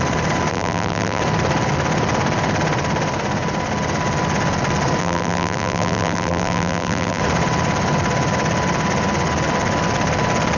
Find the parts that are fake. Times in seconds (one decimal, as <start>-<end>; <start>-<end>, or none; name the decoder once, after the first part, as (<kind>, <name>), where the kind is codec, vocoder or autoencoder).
0.5-1.2 (vocoder, BigVGAN v2); 5.0-7.2